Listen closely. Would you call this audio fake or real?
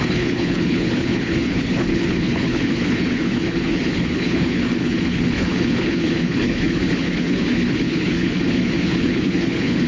fake